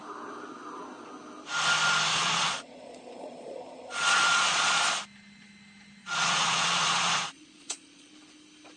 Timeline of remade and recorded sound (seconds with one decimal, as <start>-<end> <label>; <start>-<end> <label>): 0.0-2.1 recorded; 2.1-4.8 remade; 4.8-6.0 recorded; 6.0-8.1 remade; 8.1-8.8 recorded